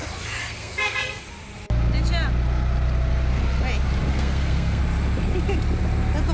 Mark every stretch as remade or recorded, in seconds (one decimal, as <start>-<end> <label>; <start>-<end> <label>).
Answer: 0.0-0.4 recorded; 0.4-1.2 remade; 1.2-4.1 recorded; 4.1-4.8 remade; 4.8-6.3 recorded